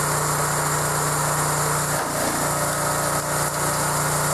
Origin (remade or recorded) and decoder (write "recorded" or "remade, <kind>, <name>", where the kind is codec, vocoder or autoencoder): recorded